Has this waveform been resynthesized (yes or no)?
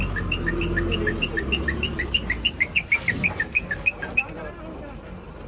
no